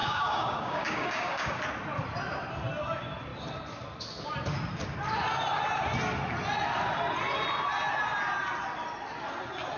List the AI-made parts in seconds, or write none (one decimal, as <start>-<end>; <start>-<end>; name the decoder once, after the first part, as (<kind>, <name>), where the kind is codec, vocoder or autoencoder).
0.0-1.6 (codec, DAC)

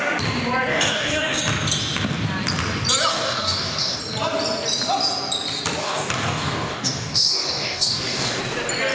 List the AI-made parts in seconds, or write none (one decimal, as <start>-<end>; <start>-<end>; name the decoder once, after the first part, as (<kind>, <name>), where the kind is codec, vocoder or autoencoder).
0.7-1.4 (codec, DAC); 3.1-4.0; 5.8-8.4

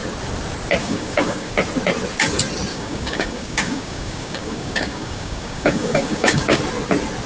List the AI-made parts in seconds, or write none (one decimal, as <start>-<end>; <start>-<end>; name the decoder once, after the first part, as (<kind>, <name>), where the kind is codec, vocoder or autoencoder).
0.8-1.5 (codec, DAC); 2.7-6.6

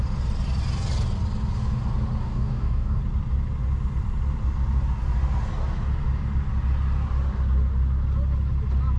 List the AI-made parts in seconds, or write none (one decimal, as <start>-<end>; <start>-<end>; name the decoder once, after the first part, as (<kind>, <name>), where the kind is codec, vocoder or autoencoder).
2.2-3.0 (codec, DAC)

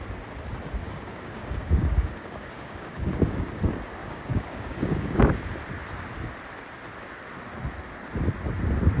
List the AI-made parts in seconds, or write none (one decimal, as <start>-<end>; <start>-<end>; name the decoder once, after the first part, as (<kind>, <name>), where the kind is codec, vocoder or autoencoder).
0.8-3.6 (codec, DAC); 4.0-5.3